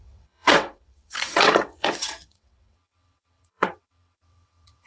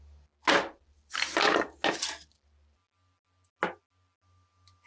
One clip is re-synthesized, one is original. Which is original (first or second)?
second